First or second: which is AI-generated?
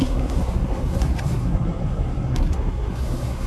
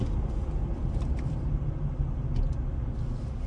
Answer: first